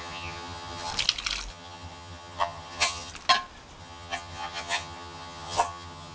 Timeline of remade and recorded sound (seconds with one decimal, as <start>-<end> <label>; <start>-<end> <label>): 0.0-0.9 remade; 0.9-1.5 recorded; 1.5-3.1 remade; 3.1-3.8 recorded; 3.8-6.1 remade